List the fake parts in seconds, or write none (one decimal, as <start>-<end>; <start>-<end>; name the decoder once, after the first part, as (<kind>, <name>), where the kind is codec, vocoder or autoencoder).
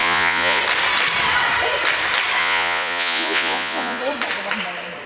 0.0-0.6 (vocoder, Vocos); 2.4-4.0